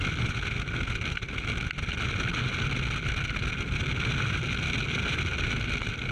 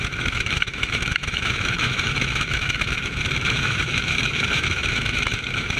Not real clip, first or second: second